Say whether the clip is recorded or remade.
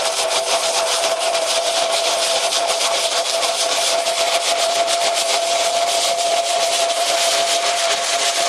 remade